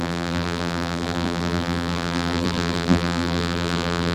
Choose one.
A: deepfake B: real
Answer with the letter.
A